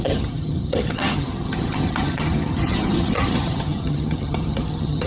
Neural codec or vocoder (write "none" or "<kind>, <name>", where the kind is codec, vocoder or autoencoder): vocoder, HiFi-GAN